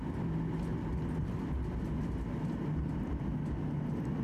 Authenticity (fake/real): real